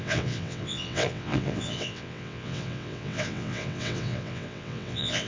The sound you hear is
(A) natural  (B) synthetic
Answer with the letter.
B